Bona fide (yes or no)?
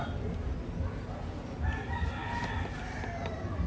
yes